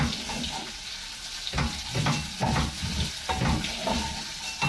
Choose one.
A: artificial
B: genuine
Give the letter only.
B